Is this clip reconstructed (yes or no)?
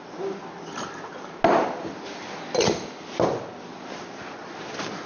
no